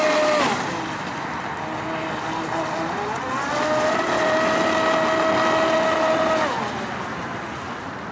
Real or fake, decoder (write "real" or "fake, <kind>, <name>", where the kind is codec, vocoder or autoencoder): real